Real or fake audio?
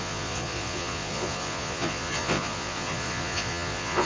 fake